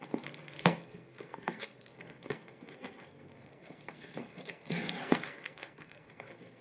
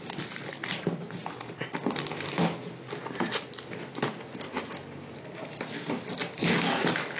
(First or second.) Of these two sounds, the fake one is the first